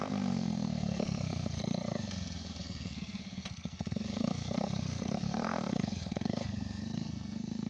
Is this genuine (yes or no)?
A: no